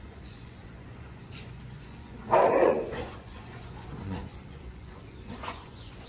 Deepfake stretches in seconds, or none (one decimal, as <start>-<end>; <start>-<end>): 0.0-6.1

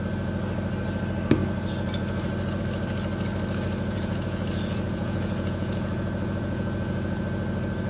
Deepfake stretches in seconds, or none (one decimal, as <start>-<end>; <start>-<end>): 3.9-7.2

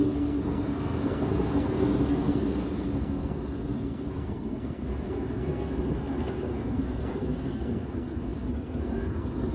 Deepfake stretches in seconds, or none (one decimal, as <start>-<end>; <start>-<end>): 0.0-9.5

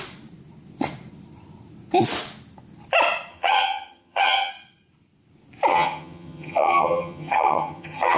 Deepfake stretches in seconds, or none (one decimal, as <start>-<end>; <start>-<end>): 3.3-4.5; 5.7-8.2

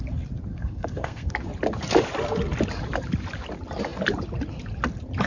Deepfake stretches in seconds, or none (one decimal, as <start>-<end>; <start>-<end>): 0.5-1.3

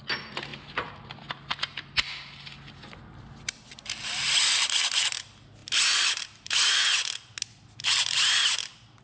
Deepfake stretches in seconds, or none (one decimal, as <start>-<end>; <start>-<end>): none